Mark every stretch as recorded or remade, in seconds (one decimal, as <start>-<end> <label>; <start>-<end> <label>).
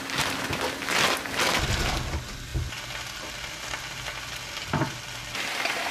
0.0-5.9 recorded